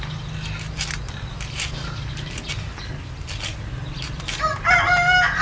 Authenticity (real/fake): real